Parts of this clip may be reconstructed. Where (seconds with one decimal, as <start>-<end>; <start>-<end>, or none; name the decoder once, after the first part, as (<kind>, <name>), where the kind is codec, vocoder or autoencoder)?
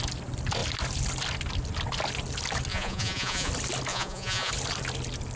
2.7-3.5 (vocoder, Vocos); 3.9-4.5